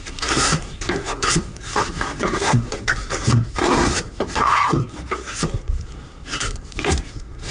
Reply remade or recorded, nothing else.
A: remade